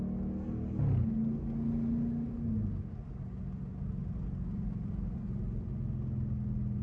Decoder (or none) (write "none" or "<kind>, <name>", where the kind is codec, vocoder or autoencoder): none